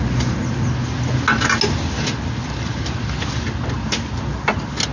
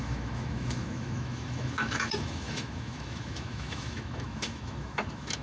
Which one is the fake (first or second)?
second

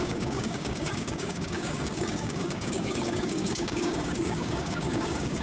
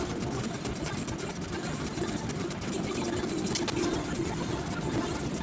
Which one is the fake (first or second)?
first